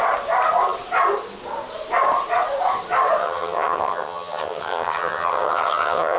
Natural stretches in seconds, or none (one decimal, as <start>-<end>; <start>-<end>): 0.0-3.2